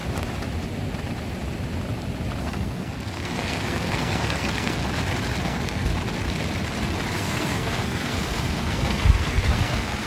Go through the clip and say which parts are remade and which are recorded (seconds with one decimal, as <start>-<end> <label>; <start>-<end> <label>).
0.0-2.4 recorded; 2.4-4.8 remade; 4.8-5.4 recorded; 5.4-5.9 remade; 5.9-7.1 recorded; 7.1-10.1 remade